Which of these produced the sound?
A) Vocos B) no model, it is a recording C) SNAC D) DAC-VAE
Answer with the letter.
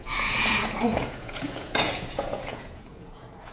A